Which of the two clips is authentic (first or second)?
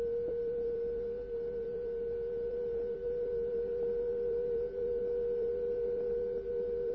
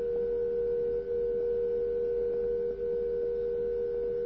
second